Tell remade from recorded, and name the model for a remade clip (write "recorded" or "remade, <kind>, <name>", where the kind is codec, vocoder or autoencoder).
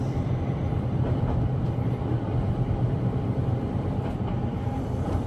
remade, vocoder, BigVGAN v2